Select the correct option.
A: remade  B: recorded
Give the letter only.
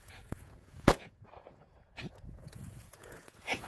A